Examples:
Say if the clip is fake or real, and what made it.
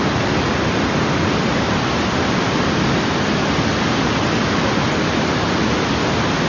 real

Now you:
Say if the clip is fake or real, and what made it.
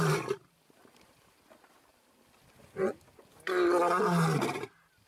real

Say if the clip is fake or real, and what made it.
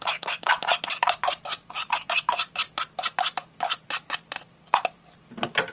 real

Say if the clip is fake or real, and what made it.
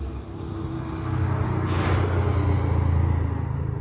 real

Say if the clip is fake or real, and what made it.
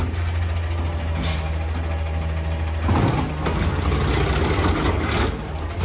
real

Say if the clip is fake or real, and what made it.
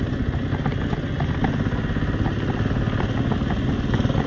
real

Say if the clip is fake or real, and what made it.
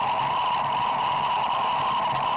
fake, vocoder, BigVGAN v2